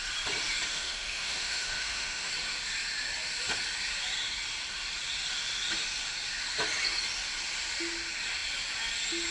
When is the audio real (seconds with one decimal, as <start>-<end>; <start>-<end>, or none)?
0.0-0.7; 2.3-9.3